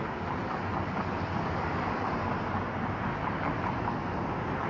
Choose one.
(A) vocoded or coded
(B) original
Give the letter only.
B